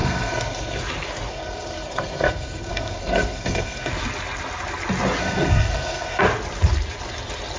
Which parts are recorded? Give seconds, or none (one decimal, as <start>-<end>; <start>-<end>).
0.8-1.3; 3.9-5.2; 6.2-7.6